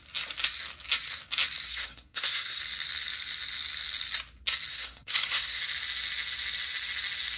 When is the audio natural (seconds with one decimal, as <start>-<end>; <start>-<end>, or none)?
0.0-1.7; 2.6-4.7; 5.6-7.4